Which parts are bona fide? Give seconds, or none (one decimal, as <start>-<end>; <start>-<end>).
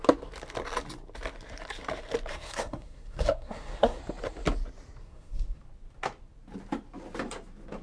0.0-2.3; 4.0-5.0; 5.6-7.8